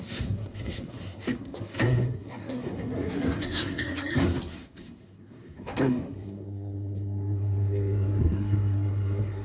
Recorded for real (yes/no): no